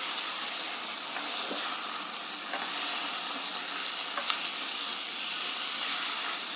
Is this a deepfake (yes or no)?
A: no